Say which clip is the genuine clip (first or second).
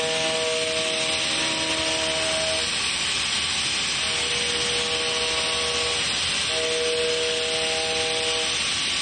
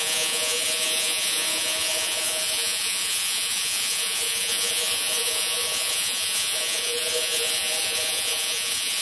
first